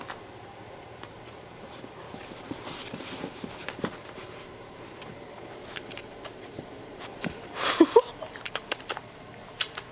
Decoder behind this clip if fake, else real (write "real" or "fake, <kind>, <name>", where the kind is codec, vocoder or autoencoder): fake, vocoder, BigVGAN v2